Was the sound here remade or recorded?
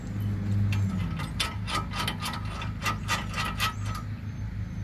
recorded